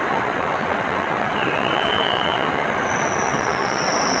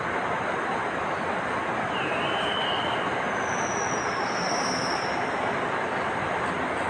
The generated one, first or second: first